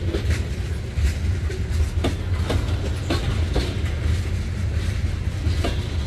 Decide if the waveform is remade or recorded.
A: recorded